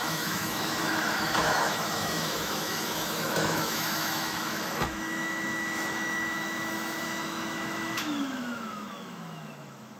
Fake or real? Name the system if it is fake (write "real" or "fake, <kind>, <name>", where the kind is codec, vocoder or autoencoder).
fake, autoencoder, DAC-VAE